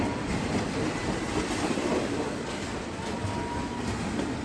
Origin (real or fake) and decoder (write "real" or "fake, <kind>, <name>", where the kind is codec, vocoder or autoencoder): real